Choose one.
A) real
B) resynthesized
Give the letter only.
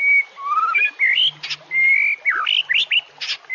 A